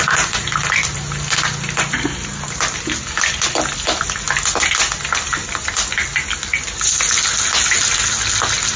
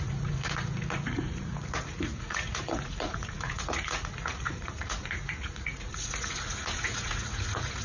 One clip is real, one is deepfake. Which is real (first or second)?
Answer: first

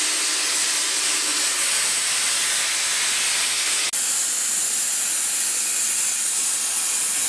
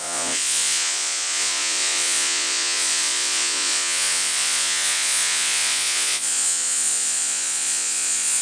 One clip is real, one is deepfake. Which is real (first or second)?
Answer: first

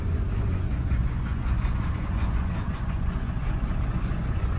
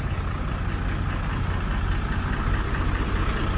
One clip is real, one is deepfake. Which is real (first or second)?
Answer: second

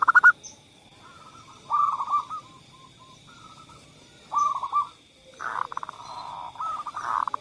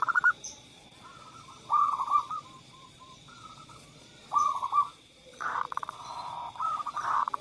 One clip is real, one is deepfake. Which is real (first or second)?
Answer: first